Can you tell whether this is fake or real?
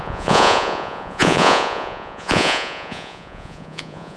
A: fake